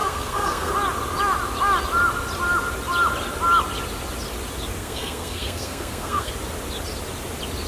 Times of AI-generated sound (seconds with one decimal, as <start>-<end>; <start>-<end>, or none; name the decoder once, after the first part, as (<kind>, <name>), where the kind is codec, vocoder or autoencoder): 0.0-0.7 (codec, SNAC); 4.8-6.3